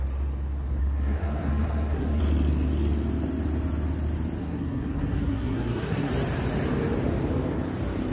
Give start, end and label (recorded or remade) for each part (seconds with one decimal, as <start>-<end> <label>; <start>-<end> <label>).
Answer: 0.0-0.8 recorded; 0.8-2.2 remade; 2.2-4.4 recorded; 4.4-6.1 remade; 6.1-8.1 recorded